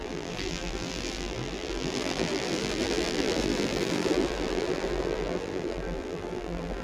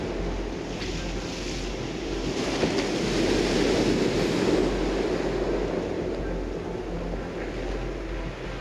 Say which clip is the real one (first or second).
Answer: second